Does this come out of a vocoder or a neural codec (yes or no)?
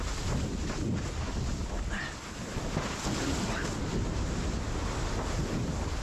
no